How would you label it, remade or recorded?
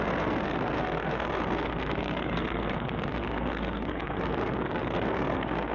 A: remade